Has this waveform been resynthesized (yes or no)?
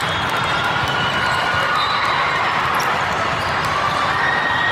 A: no